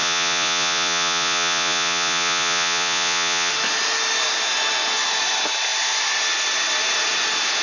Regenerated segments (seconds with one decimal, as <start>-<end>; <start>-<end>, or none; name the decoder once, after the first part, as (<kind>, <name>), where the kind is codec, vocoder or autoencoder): 0.0-3.5 (vocoder, Vocos)